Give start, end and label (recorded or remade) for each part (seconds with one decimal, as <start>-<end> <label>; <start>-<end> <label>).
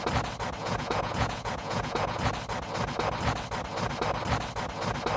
0.0-0.6 recorded; 0.6-2.3 remade; 2.3-5.2 recorded